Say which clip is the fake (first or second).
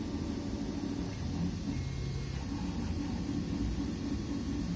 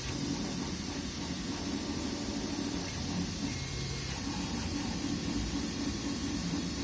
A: second